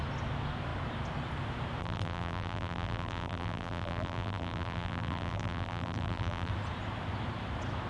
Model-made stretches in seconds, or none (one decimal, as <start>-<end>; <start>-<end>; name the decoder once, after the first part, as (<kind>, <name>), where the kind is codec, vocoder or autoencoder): 1.8-6.5 (vocoder, BigVGAN v2)